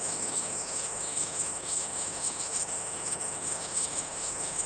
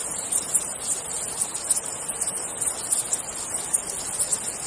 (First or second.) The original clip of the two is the second